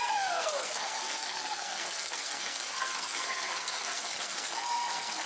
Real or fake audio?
fake